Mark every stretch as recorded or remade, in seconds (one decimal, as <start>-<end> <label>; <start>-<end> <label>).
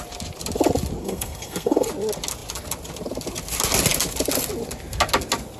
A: 0.0-1.0 recorded; 1.0-1.9 remade; 1.9-5.6 recorded